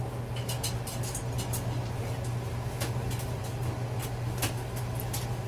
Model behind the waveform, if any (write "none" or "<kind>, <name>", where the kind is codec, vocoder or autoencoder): none